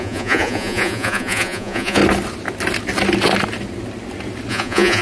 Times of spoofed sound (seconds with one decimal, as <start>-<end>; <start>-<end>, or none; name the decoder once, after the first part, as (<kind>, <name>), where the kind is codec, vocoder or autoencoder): 0.0-2.0 (vocoder, Vocos); 4.5-5.0